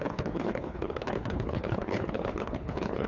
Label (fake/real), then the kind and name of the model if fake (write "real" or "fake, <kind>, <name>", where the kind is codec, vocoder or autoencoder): fake, codec, HILCodec